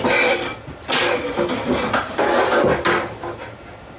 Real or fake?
real